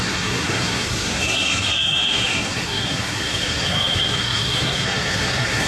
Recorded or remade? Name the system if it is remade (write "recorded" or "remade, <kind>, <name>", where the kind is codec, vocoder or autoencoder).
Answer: remade, codec, SNAC